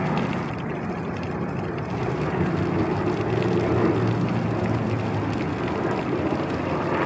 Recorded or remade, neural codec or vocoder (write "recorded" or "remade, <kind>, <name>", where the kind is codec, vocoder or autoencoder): recorded